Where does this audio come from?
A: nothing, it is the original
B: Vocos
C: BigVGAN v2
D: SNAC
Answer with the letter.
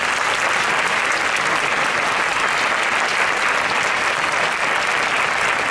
A